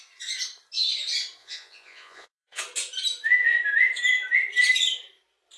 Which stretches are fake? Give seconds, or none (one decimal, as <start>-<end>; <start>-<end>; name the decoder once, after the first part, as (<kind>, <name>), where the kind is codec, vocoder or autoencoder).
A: 1.4-2.6 (vocoder, Vocos)